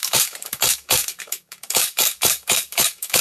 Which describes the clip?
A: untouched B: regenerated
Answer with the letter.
B